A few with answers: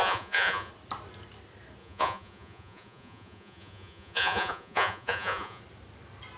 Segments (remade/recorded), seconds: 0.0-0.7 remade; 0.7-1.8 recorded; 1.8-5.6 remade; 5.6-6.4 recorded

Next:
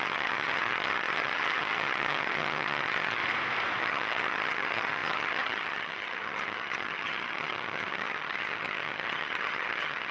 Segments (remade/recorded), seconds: 0.0-3.2 remade; 3.2-3.8 recorded; 3.8-10.1 remade

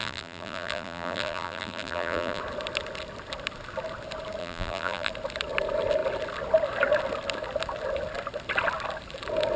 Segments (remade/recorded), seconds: 0.0-2.4 remade; 2.4-4.4 recorded; 4.4-5.1 remade; 5.1-9.6 recorded

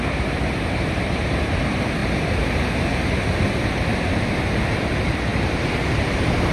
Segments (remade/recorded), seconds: 0.0-5.3 remade; 5.3-6.5 recorded

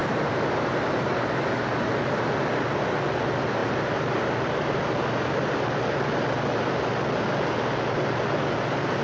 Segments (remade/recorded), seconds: 0.0-1.9 remade; 1.9-3.6 recorded; 3.6-4.8 remade; 4.8-9.0 recorded

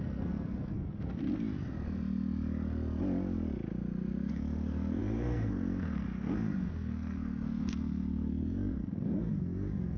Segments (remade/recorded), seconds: 0.0-1.2 remade; 1.2-4.3 recorded; 4.3-10.0 remade